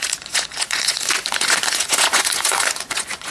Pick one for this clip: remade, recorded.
remade